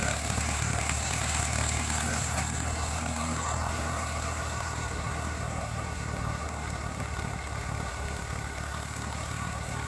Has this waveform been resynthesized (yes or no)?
yes